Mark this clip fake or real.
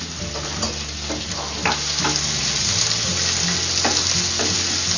real